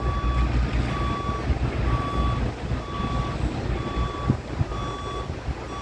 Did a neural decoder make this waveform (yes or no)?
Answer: no